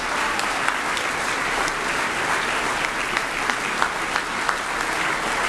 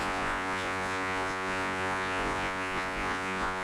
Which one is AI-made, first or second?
second